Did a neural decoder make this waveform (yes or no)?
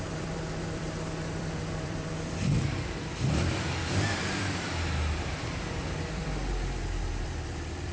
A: yes